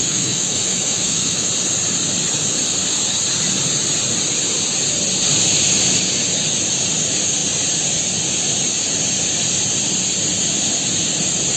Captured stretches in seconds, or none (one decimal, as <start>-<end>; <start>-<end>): 1.5-11.6